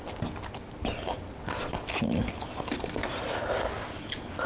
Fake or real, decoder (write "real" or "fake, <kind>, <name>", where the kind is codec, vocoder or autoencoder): real